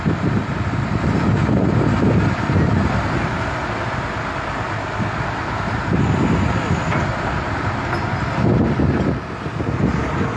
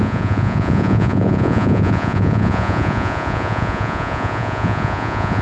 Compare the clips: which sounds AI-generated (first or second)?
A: second